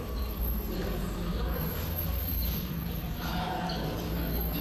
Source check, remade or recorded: remade